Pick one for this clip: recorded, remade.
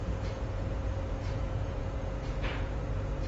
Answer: remade